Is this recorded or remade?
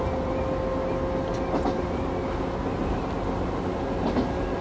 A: recorded